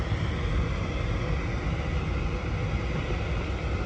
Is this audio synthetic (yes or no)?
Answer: no